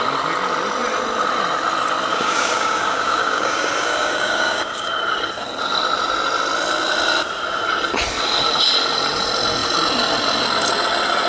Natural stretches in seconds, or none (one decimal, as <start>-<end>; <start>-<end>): 0.0-2.1; 4.9-11.3